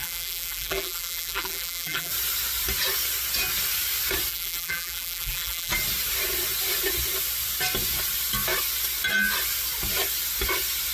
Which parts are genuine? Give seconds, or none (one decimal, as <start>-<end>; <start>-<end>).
2.1-4.3; 5.7-10.9